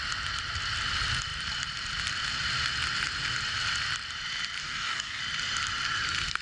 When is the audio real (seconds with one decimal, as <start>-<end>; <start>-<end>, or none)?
0.0-4.6; 5.2-6.4